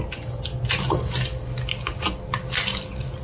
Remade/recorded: recorded